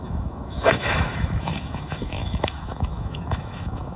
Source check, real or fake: fake